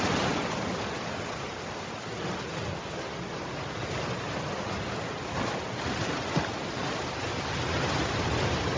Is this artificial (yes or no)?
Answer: no